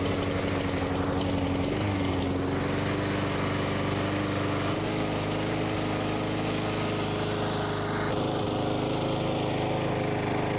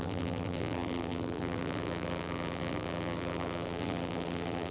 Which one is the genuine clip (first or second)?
first